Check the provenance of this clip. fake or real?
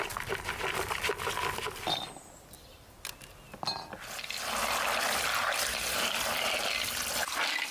real